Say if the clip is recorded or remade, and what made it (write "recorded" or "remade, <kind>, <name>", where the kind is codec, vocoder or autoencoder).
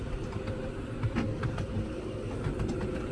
recorded